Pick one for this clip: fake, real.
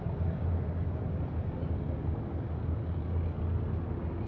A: real